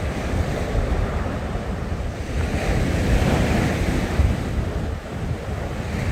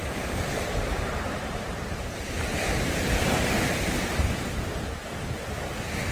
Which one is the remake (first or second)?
second